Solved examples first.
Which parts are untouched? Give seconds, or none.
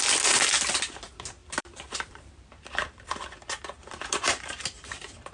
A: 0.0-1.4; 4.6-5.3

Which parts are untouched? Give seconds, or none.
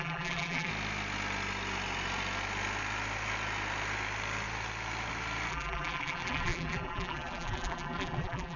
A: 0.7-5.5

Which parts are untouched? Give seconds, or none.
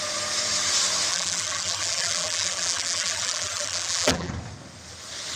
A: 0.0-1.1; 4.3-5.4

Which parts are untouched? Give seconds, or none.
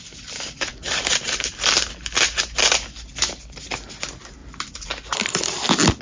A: 0.0-0.7; 1.5-4.4; 4.9-6.0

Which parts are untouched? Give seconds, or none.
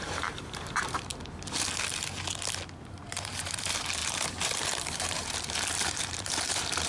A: 1.1-3.1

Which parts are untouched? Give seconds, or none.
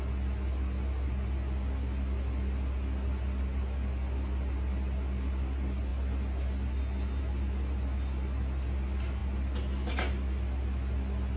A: 0.0-11.4